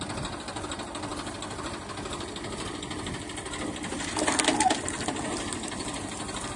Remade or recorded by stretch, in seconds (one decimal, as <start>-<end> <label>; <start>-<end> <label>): 0.0-6.6 recorded